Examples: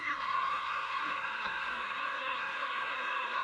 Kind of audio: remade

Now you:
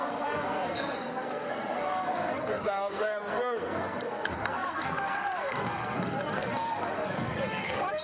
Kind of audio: remade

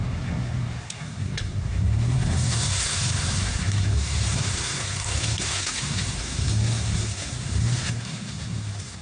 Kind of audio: remade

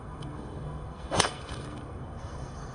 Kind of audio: remade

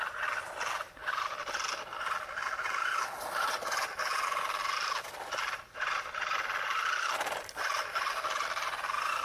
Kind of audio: recorded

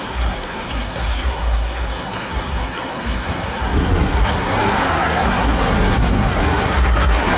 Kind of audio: remade